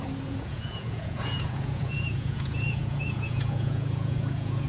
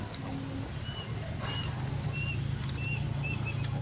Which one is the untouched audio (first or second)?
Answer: second